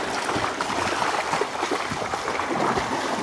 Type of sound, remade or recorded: recorded